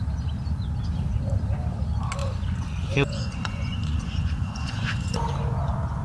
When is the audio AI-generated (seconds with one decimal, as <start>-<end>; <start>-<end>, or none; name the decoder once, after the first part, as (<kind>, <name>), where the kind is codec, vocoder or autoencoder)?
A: 2.2-5.2 (vocoder, Vocos)